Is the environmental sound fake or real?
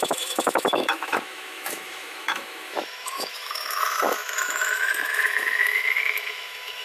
fake